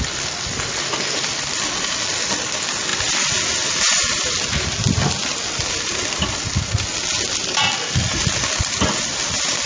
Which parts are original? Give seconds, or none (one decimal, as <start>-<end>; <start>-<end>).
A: 0.0-9.7